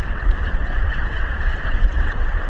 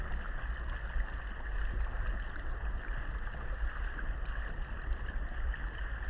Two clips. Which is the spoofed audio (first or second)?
first